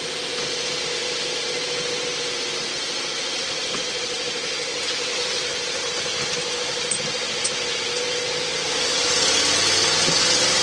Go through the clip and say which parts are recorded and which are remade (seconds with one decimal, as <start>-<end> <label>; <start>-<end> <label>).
0.0-10.6 recorded